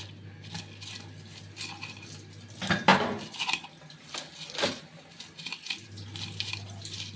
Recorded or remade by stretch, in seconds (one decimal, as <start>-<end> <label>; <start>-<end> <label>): 0.0-7.2 recorded